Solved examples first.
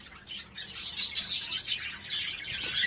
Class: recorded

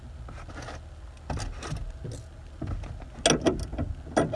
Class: recorded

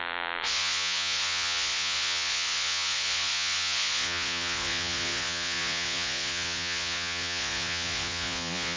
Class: remade